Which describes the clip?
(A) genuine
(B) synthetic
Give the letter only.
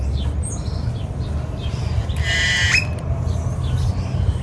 A